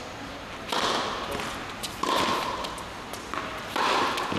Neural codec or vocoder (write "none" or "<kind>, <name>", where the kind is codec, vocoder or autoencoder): none